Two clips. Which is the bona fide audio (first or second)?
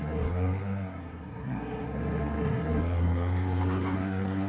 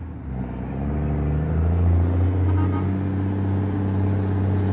second